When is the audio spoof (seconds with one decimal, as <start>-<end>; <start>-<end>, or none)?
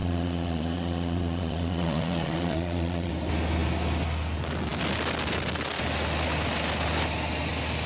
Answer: 0.0-3.1